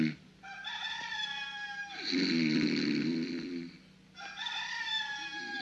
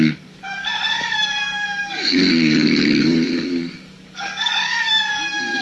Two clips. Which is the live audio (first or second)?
first